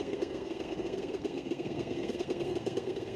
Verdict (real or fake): fake